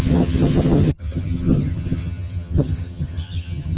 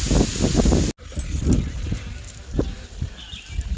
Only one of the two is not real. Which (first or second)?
first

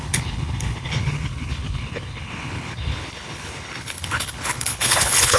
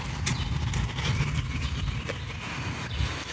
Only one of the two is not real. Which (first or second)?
first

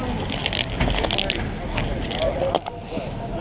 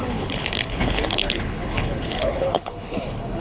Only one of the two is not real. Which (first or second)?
second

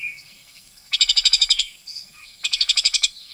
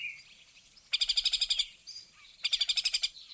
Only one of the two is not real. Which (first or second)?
first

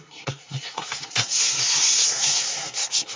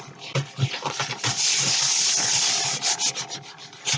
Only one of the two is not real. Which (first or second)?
first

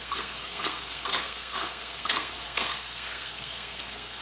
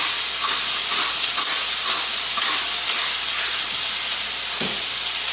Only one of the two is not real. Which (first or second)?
first